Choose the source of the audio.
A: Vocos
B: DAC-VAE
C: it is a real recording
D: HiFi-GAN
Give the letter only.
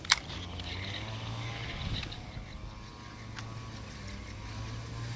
C